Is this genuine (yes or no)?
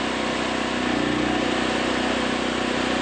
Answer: yes